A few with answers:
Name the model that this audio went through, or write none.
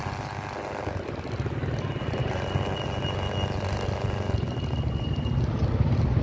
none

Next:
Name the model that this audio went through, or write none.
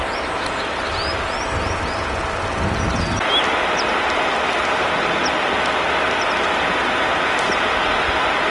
none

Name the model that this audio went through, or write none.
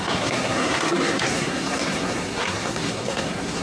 codec, SNAC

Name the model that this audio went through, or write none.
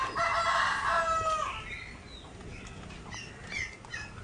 none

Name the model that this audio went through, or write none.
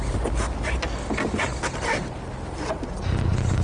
none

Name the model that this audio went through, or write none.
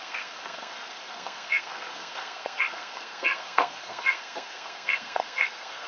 codec, SNAC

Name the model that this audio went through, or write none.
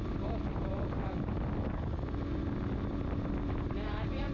none